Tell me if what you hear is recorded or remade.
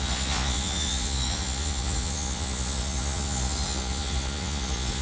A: remade